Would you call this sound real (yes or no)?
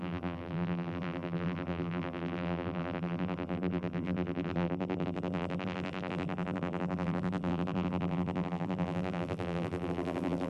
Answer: no